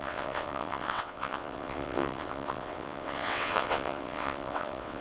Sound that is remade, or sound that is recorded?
remade